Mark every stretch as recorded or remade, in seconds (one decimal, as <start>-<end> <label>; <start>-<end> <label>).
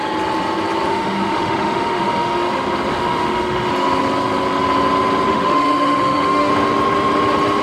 0.0-0.9 recorded; 0.9-2.5 remade; 2.5-2.9 recorded; 2.9-3.7 remade; 3.7-5.3 recorded; 5.3-6.5 remade; 6.5-7.6 recorded